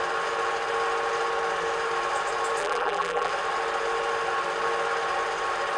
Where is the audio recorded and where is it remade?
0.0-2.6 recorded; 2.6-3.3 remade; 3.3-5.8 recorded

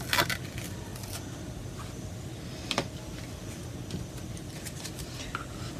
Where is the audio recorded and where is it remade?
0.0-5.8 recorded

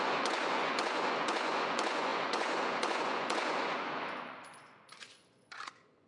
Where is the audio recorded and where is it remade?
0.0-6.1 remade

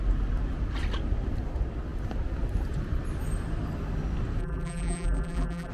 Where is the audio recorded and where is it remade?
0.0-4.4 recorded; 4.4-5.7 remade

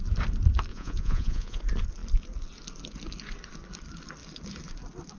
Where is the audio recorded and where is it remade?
0.0-0.7 recorded; 0.7-1.6 remade; 1.6-5.2 recorded

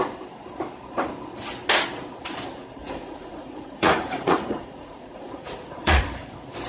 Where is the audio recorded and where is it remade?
0.0-2.8 recorded; 2.8-6.0 remade; 6.0-6.7 recorded

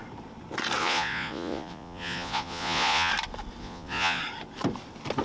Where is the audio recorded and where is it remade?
0.0-0.8 recorded; 0.8-3.1 remade; 3.1-3.6 recorded; 3.6-4.2 remade; 4.2-5.2 recorded